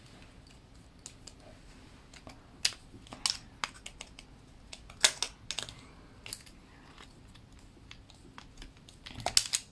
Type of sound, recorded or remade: recorded